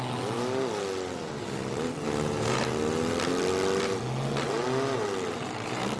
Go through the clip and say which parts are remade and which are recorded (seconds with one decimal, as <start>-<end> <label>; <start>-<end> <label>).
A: 0.0-6.0 recorded

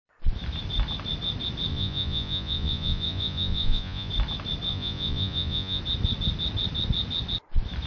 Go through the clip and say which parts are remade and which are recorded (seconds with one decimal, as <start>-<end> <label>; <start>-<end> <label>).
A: 0.0-1.7 recorded; 1.7-4.1 remade; 4.1-4.7 recorded; 4.7-5.8 remade; 5.8-7.9 recorded

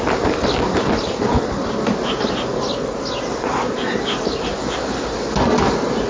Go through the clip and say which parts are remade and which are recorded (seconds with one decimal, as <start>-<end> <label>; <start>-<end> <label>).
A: 0.0-6.1 recorded